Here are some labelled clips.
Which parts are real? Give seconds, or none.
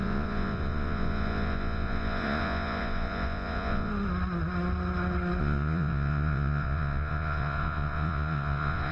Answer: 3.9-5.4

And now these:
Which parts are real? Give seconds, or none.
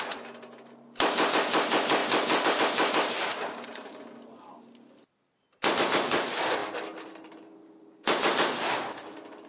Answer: 0.0-9.5